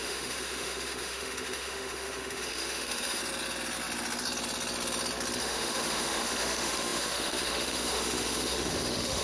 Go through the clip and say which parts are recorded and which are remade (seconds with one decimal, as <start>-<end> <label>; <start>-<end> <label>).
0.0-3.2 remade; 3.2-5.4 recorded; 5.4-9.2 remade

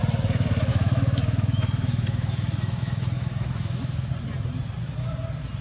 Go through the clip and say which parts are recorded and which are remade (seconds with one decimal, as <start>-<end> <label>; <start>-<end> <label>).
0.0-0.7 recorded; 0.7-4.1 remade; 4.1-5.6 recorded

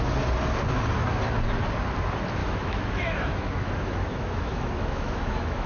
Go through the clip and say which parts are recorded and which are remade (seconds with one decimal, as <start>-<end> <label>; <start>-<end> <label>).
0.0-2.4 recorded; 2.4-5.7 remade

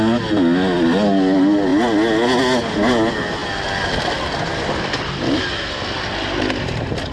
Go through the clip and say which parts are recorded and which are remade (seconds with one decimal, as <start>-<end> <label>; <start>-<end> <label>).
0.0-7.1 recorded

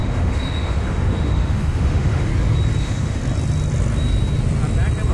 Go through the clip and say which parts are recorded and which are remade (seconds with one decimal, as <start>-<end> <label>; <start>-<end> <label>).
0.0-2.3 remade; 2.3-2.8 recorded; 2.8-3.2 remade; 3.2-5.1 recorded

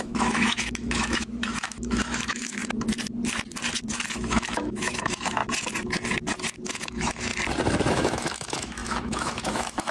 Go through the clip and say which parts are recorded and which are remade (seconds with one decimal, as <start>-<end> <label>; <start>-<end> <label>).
0.0-2.6 remade; 2.6-4.1 recorded; 4.1-5.4 remade; 5.4-6.7 recorded; 6.7-7.3 remade; 7.3-7.9 recorded; 7.9-9.9 remade